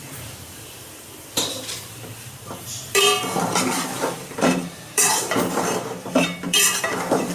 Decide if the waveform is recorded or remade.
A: remade